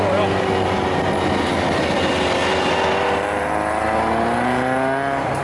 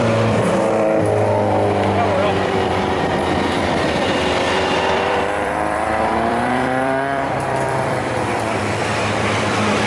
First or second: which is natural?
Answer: first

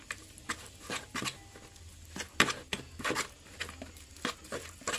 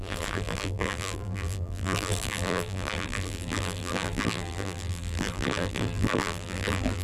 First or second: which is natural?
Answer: first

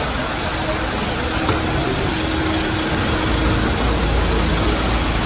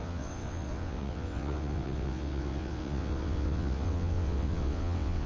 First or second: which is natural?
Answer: first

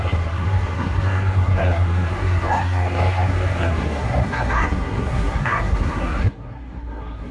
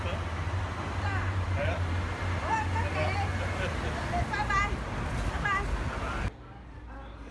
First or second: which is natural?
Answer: second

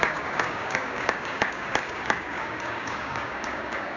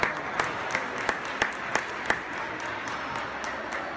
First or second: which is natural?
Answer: second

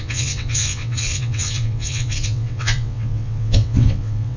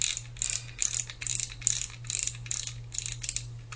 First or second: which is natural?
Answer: second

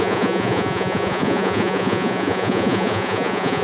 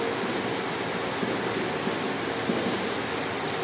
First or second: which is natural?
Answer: second